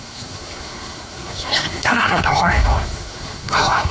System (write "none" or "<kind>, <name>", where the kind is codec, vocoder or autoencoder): codec, SNAC